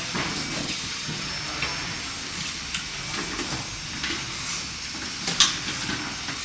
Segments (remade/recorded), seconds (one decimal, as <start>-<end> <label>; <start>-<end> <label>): 0.0-0.6 recorded; 0.6-1.3 remade; 1.3-6.4 recorded